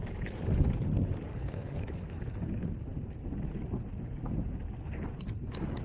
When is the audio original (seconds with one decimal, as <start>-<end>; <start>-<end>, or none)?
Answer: 0.0-1.3; 2.2-5.8